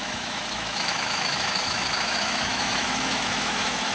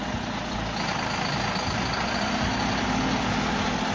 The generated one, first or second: first